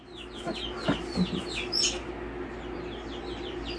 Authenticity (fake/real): real